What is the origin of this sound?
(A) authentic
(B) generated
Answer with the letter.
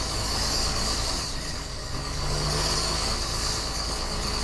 B